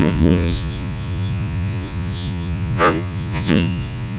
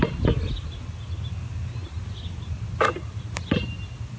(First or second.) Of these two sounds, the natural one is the second